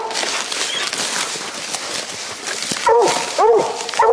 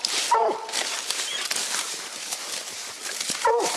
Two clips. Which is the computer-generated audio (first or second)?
second